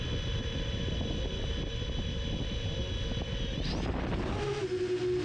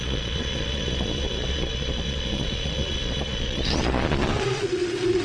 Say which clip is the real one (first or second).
first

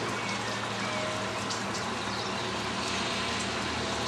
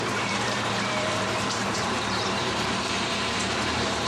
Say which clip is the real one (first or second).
first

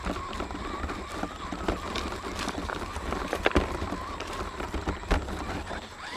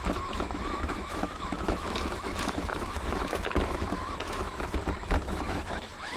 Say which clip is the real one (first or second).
first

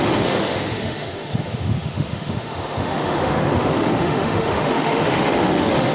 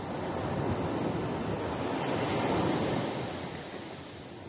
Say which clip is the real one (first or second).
second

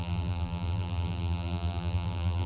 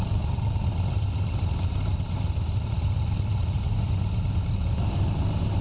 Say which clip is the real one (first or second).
second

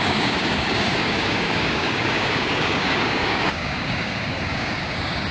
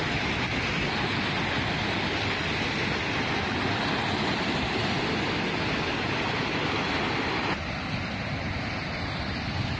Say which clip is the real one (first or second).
second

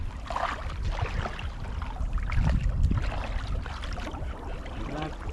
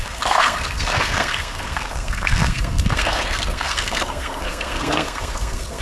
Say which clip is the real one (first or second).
first